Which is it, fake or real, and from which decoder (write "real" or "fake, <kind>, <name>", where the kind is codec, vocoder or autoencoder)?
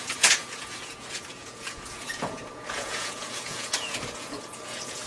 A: fake, vocoder, Vocos